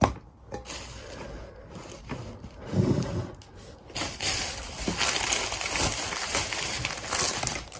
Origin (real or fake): real